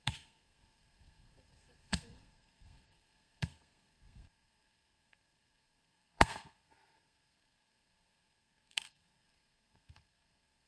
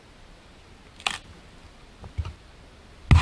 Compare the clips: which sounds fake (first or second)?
first